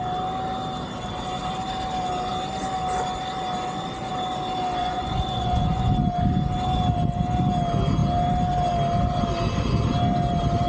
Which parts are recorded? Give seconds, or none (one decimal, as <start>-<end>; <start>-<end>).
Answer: 0.0-4.8; 5.9-10.7